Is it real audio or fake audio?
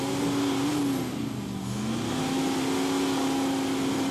real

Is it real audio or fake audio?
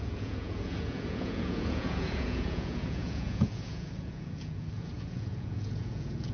fake